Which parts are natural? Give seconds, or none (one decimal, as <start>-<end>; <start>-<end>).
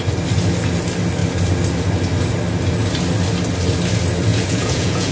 0.0-4.3